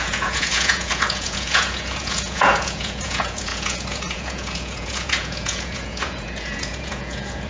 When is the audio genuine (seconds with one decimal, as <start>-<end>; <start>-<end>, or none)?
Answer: none